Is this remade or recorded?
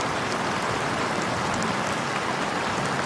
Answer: remade